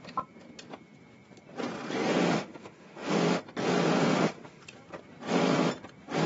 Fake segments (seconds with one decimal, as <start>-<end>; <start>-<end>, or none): 2.1-3.4; 3.9-4.6

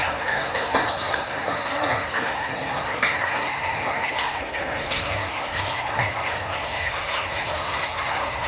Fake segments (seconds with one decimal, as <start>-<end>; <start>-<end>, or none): 0.0-8.5